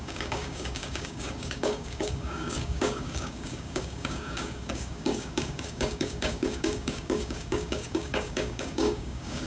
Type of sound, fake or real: fake